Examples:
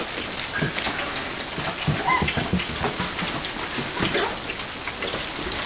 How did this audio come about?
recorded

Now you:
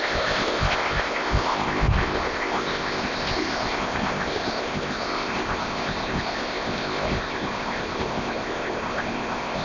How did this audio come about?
remade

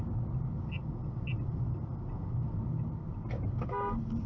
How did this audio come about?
recorded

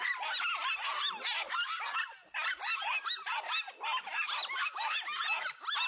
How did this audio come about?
recorded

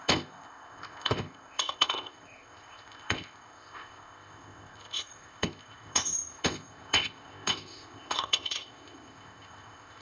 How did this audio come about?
remade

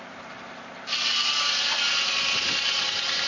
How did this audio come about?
recorded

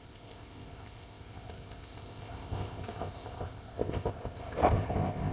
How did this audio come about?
remade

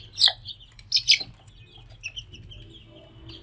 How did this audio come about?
recorded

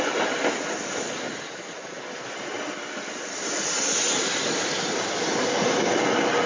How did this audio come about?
recorded